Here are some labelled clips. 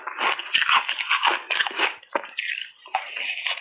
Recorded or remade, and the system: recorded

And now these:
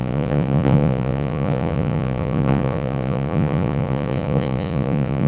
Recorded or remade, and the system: remade, vocoder, Vocos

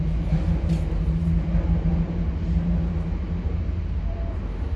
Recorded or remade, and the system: recorded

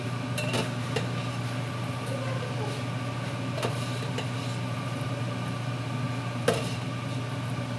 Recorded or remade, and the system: recorded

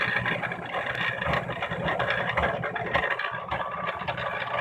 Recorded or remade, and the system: recorded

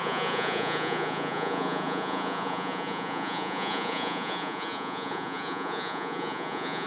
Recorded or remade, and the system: remade, vocoder, Vocos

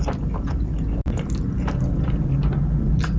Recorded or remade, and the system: recorded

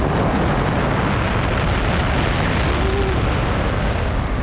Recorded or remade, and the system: recorded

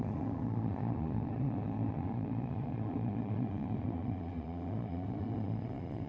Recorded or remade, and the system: remade, vocoder, Vocos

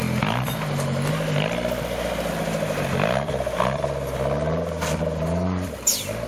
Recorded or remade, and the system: recorded